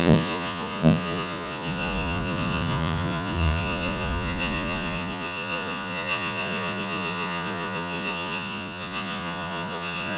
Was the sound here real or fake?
fake